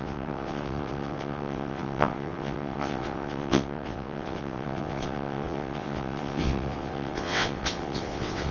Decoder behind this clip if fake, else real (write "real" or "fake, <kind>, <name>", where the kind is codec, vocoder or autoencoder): fake, vocoder, WaveNeXt